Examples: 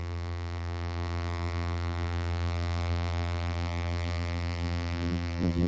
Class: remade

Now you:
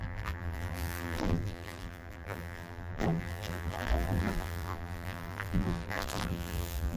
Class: remade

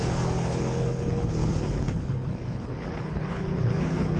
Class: remade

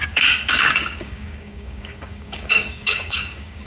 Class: remade